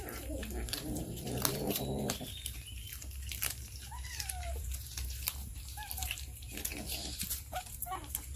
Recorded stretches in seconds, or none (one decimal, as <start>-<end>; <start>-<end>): none